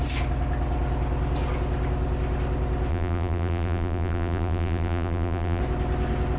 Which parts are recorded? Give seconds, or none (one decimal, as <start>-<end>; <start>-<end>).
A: 0.0-2.9; 5.6-6.4